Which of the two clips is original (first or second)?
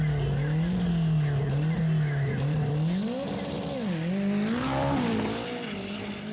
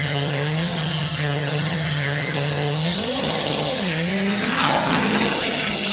first